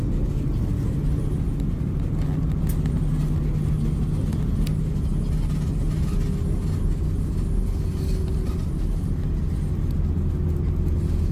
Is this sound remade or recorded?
recorded